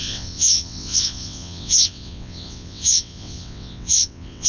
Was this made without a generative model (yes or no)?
no